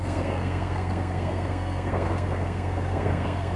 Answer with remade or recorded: remade